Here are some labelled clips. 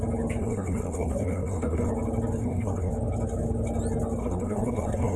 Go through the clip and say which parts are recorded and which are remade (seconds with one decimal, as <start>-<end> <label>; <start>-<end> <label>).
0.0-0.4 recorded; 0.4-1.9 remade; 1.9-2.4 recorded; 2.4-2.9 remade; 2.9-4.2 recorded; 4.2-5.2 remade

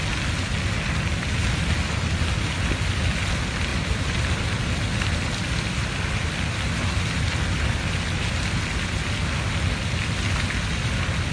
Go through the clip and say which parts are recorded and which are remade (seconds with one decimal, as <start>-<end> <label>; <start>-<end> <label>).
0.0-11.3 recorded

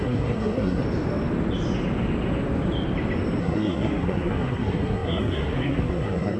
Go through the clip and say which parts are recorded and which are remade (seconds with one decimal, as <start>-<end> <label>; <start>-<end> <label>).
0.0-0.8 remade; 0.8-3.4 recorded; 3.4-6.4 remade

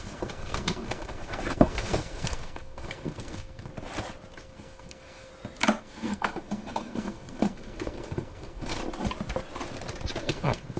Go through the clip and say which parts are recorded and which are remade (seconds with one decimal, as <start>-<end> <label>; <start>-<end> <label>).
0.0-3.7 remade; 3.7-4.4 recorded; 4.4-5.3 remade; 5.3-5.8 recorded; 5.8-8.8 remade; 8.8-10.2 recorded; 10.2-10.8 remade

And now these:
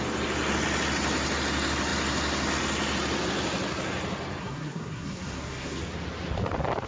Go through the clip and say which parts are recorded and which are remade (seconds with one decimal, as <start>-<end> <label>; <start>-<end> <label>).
0.0-4.4 recorded; 4.4-5.8 remade; 5.8-6.9 recorded